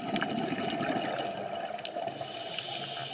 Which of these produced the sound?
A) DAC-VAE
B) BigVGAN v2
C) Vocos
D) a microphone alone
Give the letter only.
D